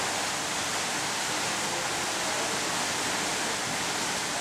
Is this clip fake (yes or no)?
no